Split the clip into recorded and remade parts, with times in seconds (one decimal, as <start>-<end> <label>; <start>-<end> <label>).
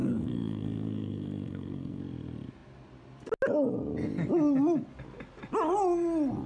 0.0-2.0 remade; 2.0-6.5 recorded